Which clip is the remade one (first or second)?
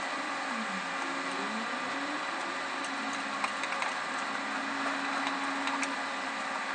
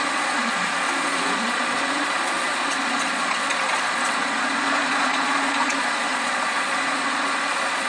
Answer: second